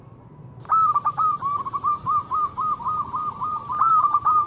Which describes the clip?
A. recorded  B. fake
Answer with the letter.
B